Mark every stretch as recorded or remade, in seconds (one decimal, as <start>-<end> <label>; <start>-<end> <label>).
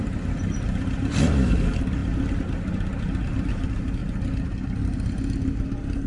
0.0-4.0 remade; 4.0-6.1 recorded